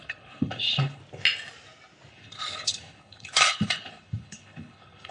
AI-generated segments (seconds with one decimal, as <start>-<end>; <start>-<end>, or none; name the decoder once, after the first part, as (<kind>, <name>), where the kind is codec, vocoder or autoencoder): 0.0-1.0 (codec, HILCodec); 2.1-5.1